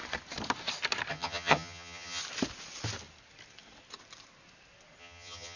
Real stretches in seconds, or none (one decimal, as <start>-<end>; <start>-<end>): 0.0-1.1; 2.2-5.0